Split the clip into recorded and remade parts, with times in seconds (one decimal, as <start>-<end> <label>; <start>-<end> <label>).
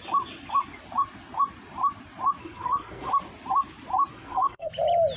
0.0-2.4 recorded; 2.4-3.1 remade; 3.1-4.1 recorded; 4.1-4.7 remade; 4.7-5.2 recorded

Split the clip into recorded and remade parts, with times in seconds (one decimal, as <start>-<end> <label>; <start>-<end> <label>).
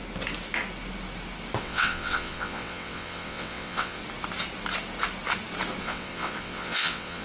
0.0-1.6 recorded; 1.6-4.0 remade; 4.0-5.8 recorded; 5.8-7.2 remade